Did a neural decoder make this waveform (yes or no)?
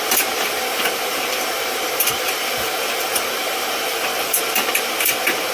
yes